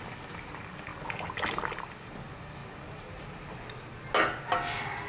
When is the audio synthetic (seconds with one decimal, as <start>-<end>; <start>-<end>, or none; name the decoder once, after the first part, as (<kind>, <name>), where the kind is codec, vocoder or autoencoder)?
none